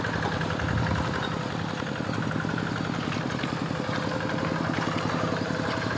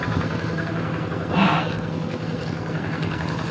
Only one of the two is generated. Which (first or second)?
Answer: second